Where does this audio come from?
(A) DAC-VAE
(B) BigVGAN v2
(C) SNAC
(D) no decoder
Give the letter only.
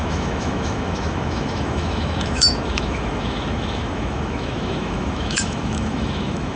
A